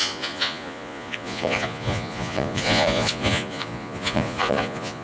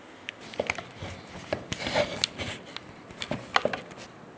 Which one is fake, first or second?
first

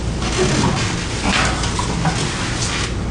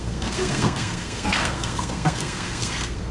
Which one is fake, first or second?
second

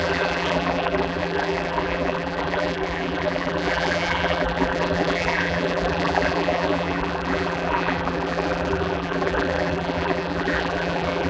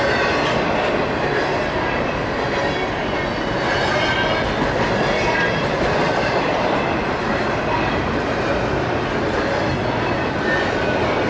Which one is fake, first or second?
first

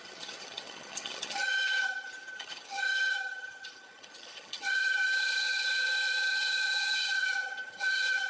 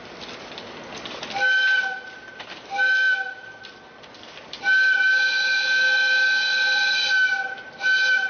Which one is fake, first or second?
first